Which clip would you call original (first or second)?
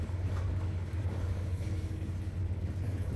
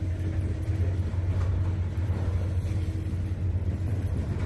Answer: second